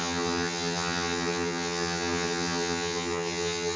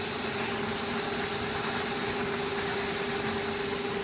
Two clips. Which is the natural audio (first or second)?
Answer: second